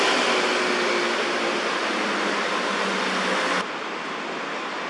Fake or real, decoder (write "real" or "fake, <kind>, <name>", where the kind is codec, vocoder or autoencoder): real